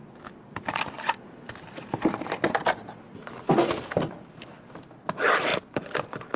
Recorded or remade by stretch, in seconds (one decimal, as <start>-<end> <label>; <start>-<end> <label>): 0.0-6.4 recorded